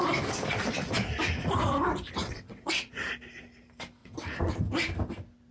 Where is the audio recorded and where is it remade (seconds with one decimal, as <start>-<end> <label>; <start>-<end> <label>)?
0.0-2.2 recorded; 2.2-2.9 remade; 2.9-4.0 recorded; 4.0-4.5 remade; 4.5-5.5 recorded